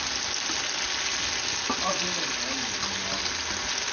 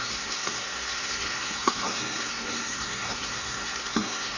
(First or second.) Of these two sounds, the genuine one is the first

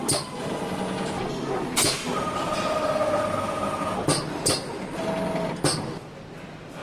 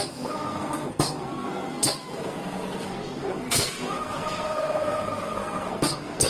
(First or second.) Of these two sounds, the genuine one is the first